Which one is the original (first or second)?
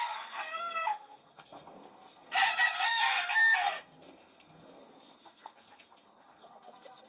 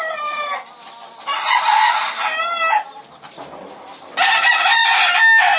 second